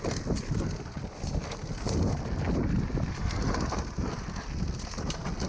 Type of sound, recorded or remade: recorded